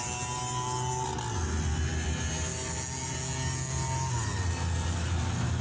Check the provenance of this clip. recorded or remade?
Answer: recorded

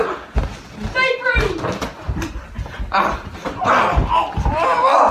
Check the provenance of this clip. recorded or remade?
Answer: recorded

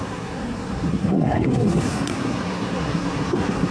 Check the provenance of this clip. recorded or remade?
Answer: remade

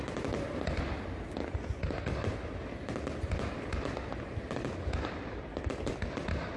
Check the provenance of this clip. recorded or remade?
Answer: recorded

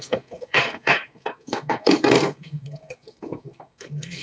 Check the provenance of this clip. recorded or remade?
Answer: remade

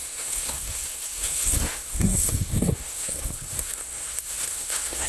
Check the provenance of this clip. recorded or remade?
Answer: remade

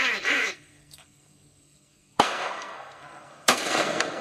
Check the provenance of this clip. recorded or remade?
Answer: remade